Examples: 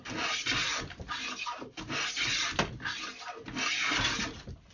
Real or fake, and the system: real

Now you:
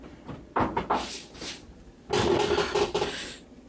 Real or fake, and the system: real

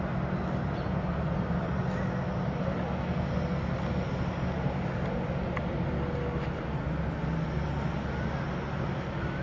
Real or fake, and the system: real